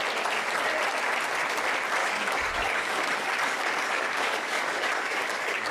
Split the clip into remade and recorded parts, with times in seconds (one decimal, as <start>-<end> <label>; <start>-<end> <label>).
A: 0.0-2.0 recorded; 2.0-5.7 remade